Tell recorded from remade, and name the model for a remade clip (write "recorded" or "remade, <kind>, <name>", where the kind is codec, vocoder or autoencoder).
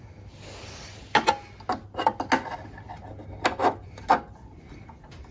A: recorded